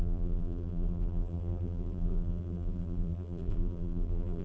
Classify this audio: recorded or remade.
remade